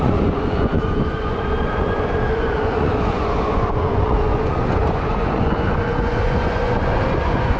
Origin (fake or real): fake